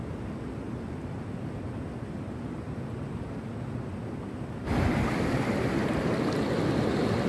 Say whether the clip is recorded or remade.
recorded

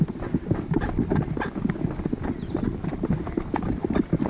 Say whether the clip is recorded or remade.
recorded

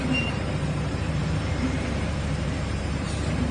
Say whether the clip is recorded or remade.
remade